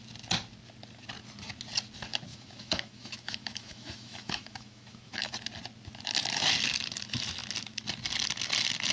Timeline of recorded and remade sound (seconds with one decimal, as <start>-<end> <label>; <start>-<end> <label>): 0.0-2.3 recorded; 2.3-5.3 remade; 5.3-8.9 recorded